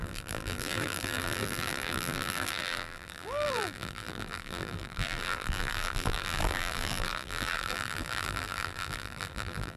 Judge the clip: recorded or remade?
remade